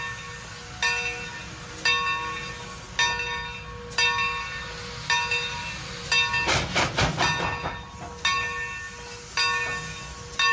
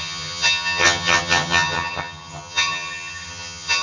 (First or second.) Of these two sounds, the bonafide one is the first